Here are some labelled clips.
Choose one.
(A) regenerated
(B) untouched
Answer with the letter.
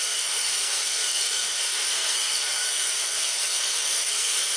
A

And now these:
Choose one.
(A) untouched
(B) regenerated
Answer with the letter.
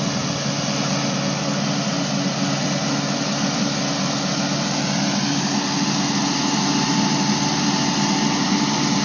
A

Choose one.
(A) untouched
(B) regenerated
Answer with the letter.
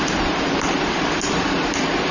B